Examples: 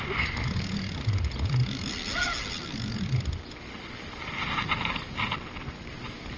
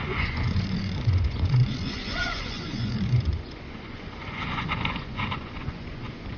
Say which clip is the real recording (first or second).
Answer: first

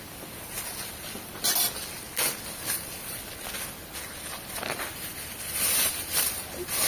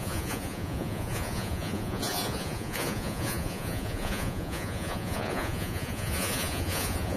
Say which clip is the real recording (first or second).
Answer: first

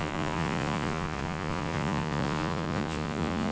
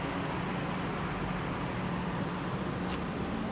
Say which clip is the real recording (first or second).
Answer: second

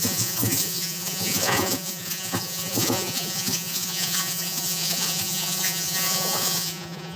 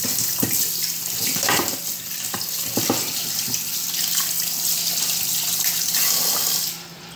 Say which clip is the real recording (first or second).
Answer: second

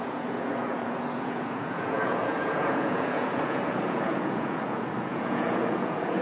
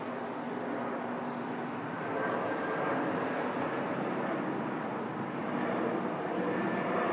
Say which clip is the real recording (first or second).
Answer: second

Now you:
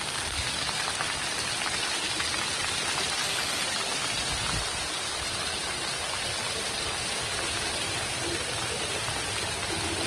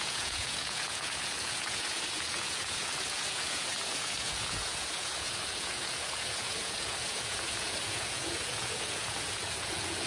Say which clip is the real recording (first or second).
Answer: first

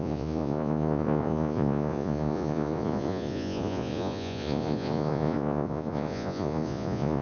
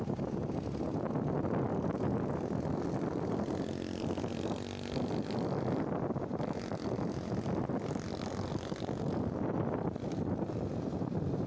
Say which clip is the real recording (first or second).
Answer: second